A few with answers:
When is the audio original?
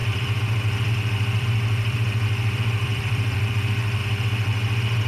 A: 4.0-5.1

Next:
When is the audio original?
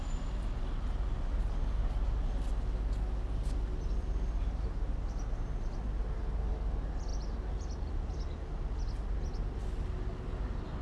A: 0.0-10.8